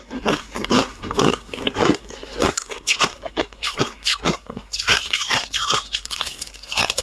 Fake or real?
fake